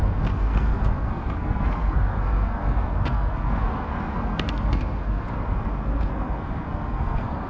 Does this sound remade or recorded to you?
remade